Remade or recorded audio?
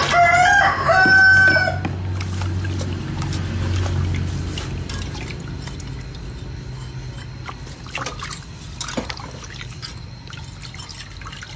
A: recorded